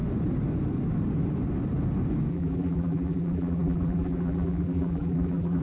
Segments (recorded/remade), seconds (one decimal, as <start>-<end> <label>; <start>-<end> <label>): 0.0-2.3 recorded; 2.3-5.6 remade